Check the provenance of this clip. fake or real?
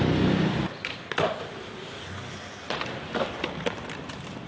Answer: real